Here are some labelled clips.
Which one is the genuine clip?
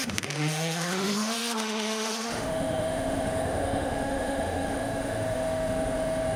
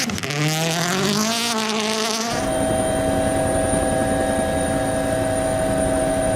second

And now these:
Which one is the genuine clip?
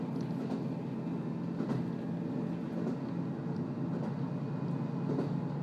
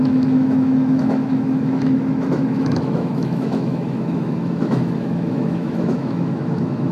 first